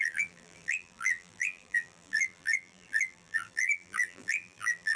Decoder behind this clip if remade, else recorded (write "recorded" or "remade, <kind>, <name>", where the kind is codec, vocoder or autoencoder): remade, vocoder, BigVGAN v2